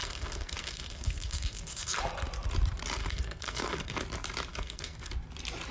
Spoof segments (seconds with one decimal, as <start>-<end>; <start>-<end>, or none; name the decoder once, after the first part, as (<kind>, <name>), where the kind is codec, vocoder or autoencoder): 0.0-2.0 (codec, SNAC); 3.0-4.0; 4.5-5.1